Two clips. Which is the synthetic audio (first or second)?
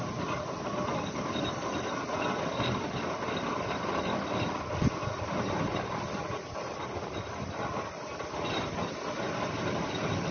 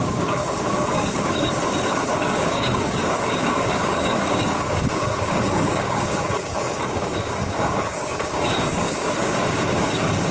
second